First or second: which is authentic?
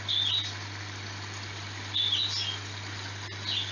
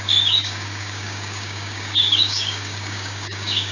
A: first